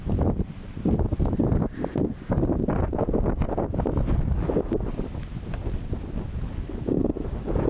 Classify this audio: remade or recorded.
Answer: recorded